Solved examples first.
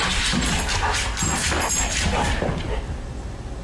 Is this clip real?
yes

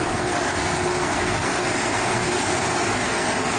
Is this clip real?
no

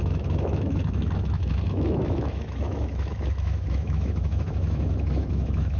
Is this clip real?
no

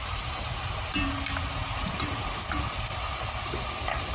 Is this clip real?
yes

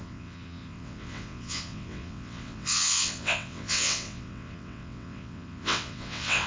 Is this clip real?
no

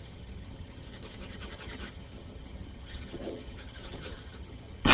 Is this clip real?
no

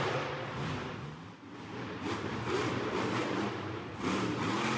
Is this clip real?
yes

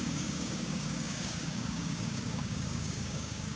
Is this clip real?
no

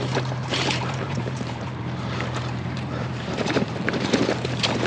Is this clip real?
no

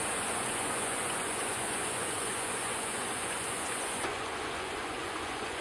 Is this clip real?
no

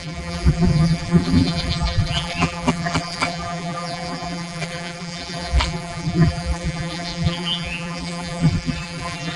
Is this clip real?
no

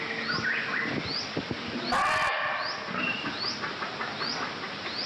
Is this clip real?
yes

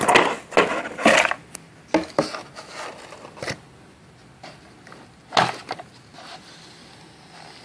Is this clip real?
yes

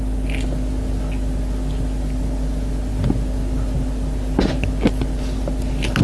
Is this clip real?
yes